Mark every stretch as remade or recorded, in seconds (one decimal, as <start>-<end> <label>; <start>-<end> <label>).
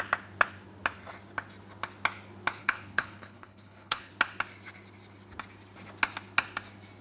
0.0-2.6 recorded; 2.6-4.1 remade; 4.1-7.0 recorded